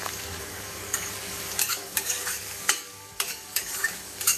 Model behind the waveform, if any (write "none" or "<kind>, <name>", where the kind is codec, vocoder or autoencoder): codec, DAC